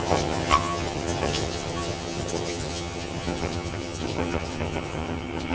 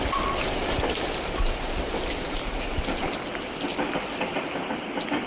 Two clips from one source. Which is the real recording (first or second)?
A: second